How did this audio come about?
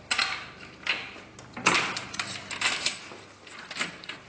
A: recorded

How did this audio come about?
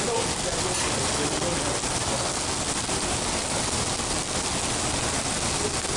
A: recorded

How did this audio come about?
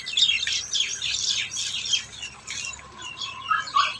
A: recorded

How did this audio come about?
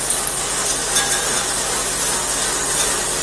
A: recorded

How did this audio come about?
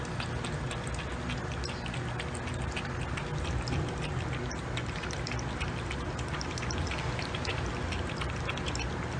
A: recorded